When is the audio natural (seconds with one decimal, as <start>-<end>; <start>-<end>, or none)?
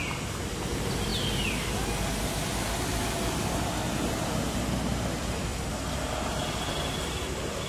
0.0-7.7